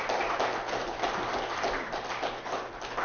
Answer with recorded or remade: recorded